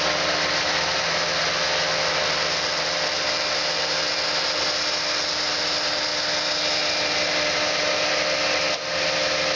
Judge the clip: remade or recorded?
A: recorded